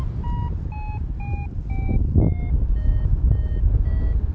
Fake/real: real